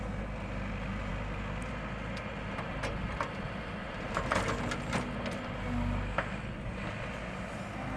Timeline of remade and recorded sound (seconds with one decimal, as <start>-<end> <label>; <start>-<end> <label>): 0.0-3.8 recorded; 3.8-5.0 remade; 5.0-8.0 recorded